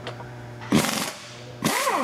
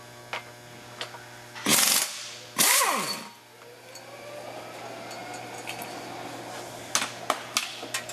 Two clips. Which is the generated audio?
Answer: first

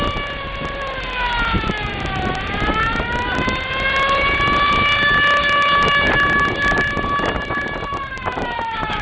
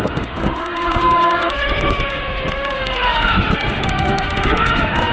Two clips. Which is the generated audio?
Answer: second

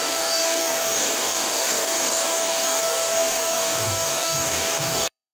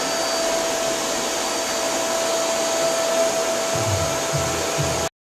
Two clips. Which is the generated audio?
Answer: first